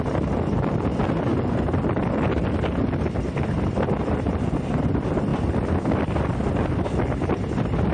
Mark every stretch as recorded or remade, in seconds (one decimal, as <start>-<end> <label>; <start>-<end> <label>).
0.0-7.9 recorded